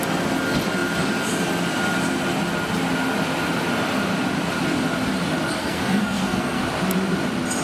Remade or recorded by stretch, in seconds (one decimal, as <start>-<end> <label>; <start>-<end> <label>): 0.0-5.6 recorded; 5.6-6.6 remade; 6.6-7.6 recorded